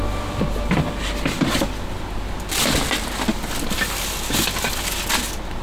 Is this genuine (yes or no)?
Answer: yes